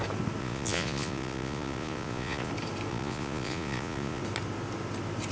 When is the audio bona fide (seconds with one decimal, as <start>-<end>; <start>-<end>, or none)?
0.0-0.4; 2.5-2.9; 4.2-5.3